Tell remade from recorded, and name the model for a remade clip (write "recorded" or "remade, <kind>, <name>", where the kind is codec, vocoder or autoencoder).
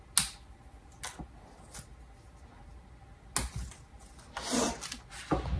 recorded